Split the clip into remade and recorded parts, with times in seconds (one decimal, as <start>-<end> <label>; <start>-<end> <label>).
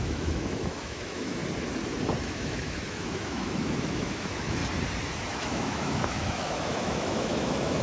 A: 0.0-1.4 remade; 1.4-2.2 recorded; 2.2-4.6 remade; 4.6-5.3 recorded; 5.3-7.8 remade